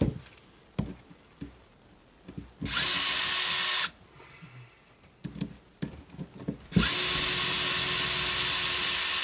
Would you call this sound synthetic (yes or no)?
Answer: no